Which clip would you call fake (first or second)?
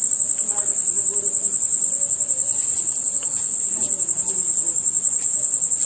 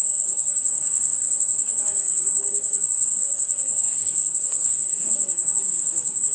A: second